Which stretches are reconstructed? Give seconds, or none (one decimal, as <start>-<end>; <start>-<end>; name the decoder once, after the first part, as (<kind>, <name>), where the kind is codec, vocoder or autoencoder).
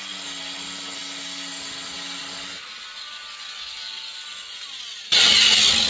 none